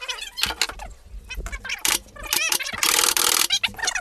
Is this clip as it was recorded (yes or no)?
yes